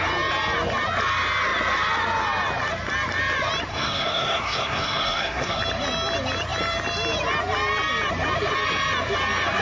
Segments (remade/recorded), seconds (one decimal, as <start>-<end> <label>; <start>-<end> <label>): 0.0-3.7 recorded; 3.7-5.6 remade; 5.6-9.6 recorded

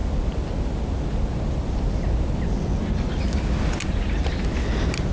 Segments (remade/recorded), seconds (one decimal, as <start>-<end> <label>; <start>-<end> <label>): 0.0-5.1 recorded